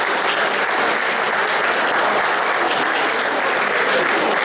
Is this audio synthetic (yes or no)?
no